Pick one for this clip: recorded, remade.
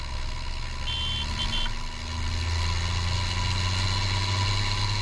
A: recorded